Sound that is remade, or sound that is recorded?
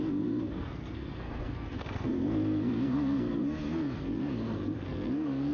remade